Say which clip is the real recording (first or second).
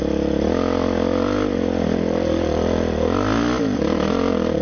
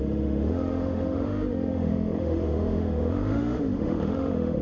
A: first